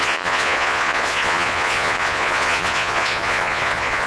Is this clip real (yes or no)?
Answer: no